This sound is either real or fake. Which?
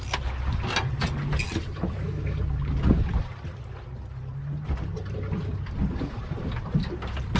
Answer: real